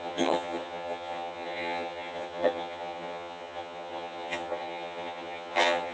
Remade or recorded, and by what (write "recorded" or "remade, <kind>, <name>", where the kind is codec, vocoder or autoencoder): remade, vocoder, HiFi-GAN